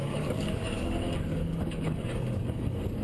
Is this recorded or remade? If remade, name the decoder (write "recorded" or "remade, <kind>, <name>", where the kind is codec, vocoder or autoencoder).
remade, codec, DAC